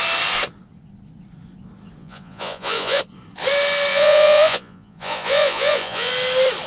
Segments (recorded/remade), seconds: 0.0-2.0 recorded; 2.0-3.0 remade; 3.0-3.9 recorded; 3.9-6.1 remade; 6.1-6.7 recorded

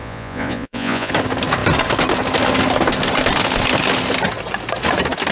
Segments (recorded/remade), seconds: 0.0-1.1 remade; 1.1-5.3 recorded

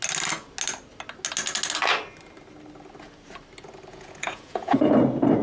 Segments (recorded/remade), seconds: 0.0-3.9 recorded; 3.9-4.9 remade; 4.9-5.4 recorded

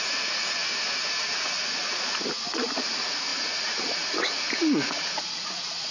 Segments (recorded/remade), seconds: 0.0-0.6 remade; 0.6-1.2 recorded; 1.2-5.9 remade